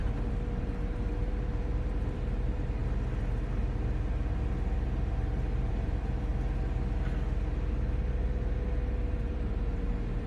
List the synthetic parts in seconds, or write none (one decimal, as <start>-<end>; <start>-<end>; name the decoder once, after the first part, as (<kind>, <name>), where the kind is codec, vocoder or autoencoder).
0.6-2.8 (vocoder, BigVGAN v2); 5.7-6.3; 9.1-10.3